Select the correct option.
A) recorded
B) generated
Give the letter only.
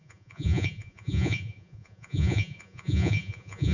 B